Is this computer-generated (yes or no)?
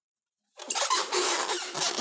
no